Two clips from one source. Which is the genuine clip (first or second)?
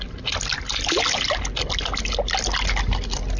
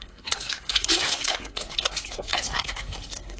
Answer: first